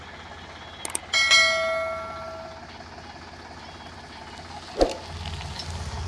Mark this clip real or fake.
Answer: real